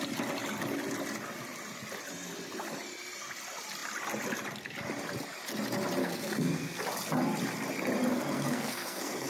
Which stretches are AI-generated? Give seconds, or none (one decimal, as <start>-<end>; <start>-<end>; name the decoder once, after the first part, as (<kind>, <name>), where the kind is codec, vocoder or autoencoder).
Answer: 6.0-6.8 (codec, SNAC); 8.1-9.3